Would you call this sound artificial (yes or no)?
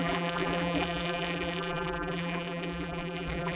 yes